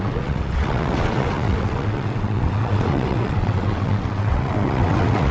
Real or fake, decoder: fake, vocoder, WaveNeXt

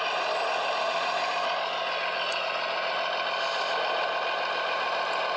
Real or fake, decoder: real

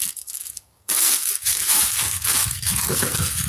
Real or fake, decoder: fake, codec, SNAC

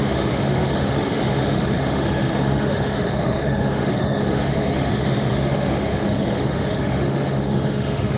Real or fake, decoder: fake, autoencoder, DAC-VAE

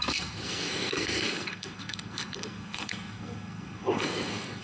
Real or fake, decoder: fake, codec, SNAC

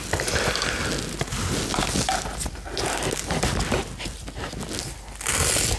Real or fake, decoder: real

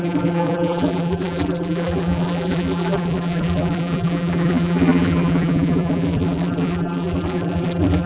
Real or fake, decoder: fake, vocoder, BigVGAN v2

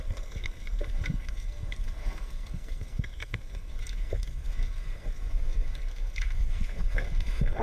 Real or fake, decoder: fake, codec, SNAC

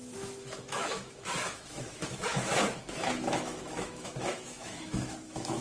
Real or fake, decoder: fake, autoencoder, DAC-VAE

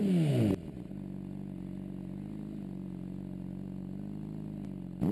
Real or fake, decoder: real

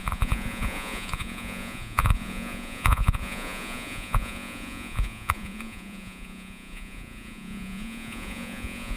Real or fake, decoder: fake, vocoder, Vocos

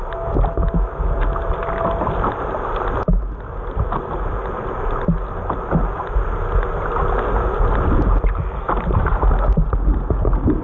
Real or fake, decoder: real